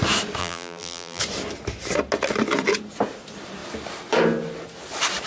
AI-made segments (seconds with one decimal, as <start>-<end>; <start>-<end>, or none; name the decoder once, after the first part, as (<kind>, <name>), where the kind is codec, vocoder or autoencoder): 0.4-1.2 (vocoder, BigVGAN v2)